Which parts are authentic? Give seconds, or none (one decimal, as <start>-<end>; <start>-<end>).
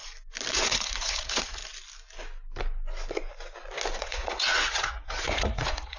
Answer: 0.0-0.5; 1.6-4.0